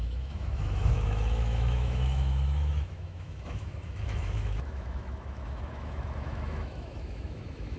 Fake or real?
fake